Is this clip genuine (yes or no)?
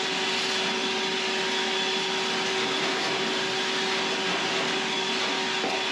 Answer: yes